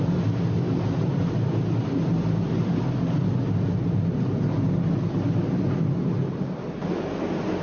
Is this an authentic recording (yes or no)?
yes